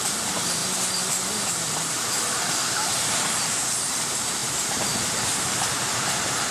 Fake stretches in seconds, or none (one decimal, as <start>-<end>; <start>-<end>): 0.0-0.6; 1.5-6.5